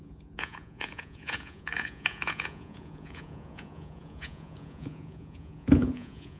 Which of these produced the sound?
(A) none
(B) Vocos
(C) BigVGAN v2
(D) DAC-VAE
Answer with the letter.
B